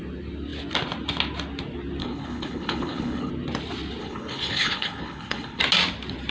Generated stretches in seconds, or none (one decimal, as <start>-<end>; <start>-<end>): 2.0-3.3; 4.0-5.6